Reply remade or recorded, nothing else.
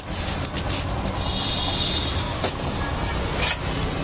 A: recorded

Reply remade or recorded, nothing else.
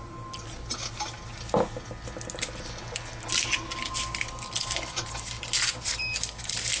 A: recorded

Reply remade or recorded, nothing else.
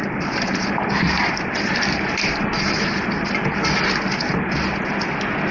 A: recorded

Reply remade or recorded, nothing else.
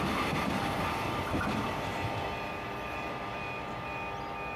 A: recorded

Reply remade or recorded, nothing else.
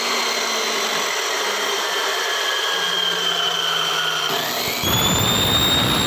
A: recorded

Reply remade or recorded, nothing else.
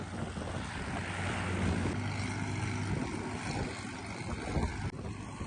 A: recorded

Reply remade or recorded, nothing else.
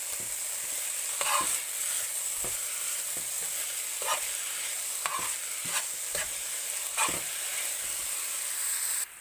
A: recorded